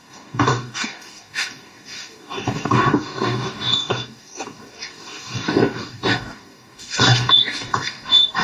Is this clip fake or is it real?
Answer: fake